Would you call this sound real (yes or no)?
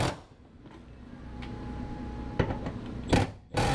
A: yes